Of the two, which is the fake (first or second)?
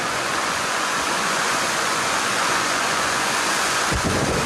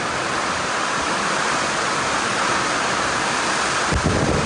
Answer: first